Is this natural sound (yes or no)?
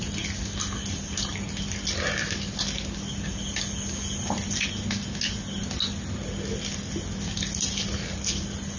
yes